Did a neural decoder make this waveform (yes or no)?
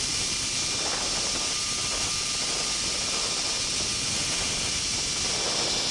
no